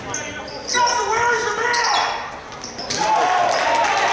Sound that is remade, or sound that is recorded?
recorded